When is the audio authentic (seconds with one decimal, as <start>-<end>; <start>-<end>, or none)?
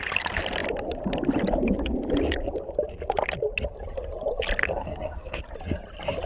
0.0-4.6; 5.4-6.3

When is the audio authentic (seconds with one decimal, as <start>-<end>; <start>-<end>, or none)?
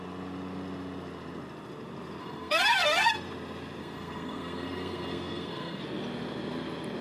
0.0-2.2; 3.1-3.8; 5.8-7.0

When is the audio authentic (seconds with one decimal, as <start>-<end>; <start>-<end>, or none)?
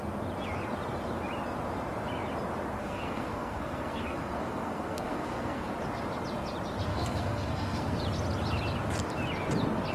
0.0-2.8; 5.7-6.9; 8.0-9.9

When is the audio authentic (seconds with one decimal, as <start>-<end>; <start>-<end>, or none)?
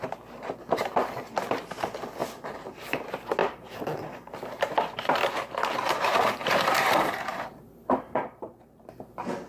0.0-2.2; 3.0-3.4; 7.6-8.2; 8.9-9.5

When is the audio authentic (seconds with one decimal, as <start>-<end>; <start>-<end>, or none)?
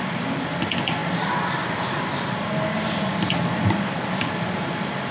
0.0-5.1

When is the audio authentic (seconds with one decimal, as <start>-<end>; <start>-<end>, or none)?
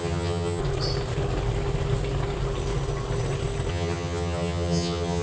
0.6-3.7